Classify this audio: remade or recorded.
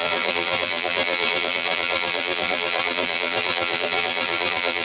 remade